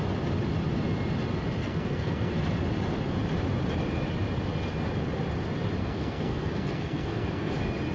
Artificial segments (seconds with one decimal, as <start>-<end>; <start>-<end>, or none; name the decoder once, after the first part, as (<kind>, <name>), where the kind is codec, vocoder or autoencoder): 1.6-2.3 (codec, SNAC); 5.8-7.5